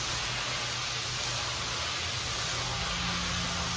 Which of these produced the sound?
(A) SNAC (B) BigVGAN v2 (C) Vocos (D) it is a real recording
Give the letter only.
D